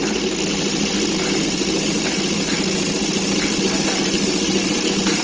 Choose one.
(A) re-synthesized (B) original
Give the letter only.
B